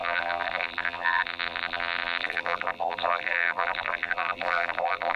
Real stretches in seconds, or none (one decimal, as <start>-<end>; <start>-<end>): none